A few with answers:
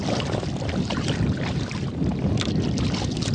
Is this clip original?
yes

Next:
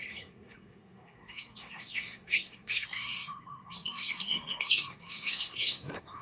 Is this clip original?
no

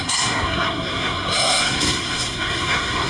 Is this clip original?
no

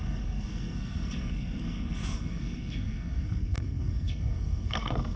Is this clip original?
no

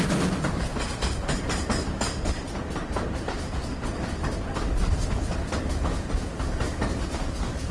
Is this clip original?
yes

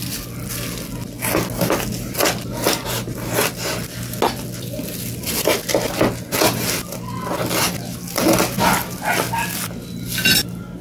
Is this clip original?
yes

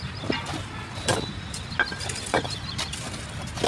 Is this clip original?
yes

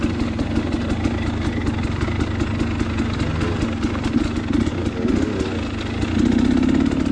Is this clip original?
yes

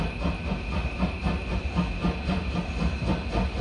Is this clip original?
yes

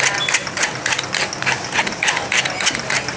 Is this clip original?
yes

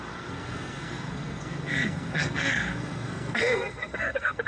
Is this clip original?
no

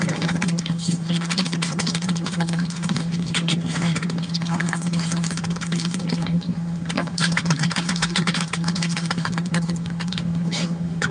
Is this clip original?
no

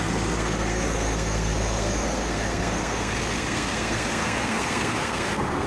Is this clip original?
no